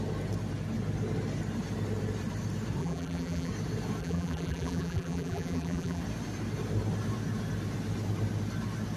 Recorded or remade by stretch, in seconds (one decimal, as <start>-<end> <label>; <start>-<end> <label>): 0.0-2.8 recorded; 2.8-3.5 remade; 3.5-4.0 recorded; 4.0-6.0 remade; 6.0-9.0 recorded